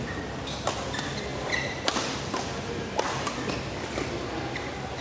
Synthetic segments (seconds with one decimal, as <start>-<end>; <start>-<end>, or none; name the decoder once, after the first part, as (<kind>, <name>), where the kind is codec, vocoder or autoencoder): none